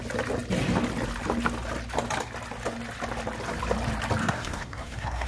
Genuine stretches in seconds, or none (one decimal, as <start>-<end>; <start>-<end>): 0.0-4.2